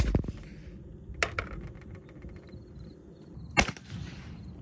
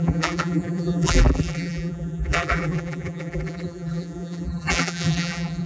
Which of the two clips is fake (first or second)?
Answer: second